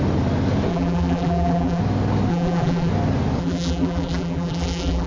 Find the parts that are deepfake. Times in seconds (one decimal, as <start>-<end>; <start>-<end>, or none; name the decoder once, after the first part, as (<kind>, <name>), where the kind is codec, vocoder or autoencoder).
0.7-1.8 (vocoder, BigVGAN v2); 2.3-2.9; 3.4-5.1